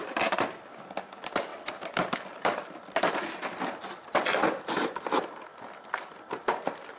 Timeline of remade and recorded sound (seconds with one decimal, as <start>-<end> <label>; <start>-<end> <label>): 0.0-7.0 recorded